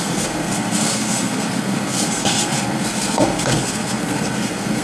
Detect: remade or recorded remade